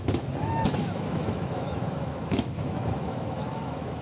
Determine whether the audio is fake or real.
fake